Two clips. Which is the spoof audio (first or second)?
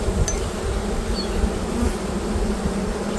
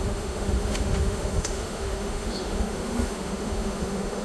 second